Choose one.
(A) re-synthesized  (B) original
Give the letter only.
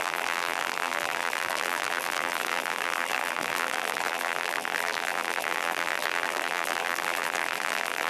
A